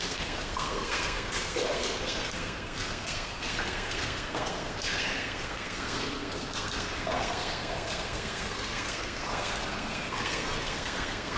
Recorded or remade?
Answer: remade